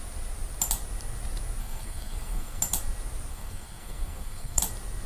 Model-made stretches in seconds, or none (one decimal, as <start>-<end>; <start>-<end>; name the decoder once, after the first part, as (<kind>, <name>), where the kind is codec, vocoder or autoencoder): 1.6-2.6 (codec, SNAC); 3.3-4.6